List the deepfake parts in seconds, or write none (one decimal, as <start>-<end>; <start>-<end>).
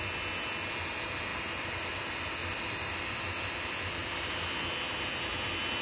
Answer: none